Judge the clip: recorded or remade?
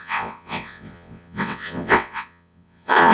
remade